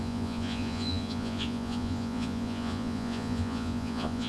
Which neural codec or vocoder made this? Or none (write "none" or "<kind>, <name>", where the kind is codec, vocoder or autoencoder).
vocoder, Vocos